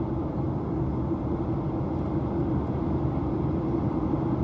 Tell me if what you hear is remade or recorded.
recorded